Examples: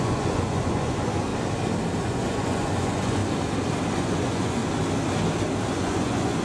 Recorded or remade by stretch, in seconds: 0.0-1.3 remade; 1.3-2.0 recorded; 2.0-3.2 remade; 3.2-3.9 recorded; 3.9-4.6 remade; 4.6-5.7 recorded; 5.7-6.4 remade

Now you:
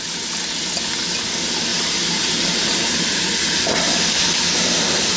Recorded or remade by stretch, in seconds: 0.0-1.7 recorded; 1.7-3.0 remade; 3.0-5.2 recorded

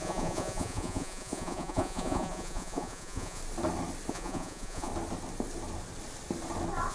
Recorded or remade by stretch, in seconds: 0.0-3.4 remade; 3.4-4.1 recorded; 4.1-4.9 remade; 4.9-6.9 recorded

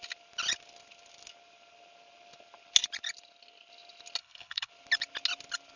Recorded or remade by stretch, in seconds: 0.0-4.2 recorded; 4.2-4.7 remade; 4.7-5.8 recorded

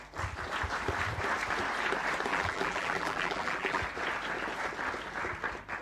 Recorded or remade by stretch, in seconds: 0.0-2.3 recorded; 2.3-3.8 remade; 3.8-5.8 recorded

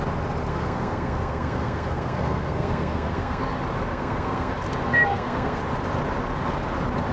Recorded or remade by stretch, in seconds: 0.0-0.5 recorded; 0.5-3.4 remade; 3.4-3.9 recorded; 3.9-4.5 remade; 4.5-4.9 recorded; 4.9-5.6 remade; 5.6-7.1 recorded

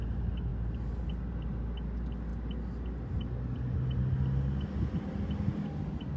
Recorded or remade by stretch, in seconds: 0.0-6.2 recorded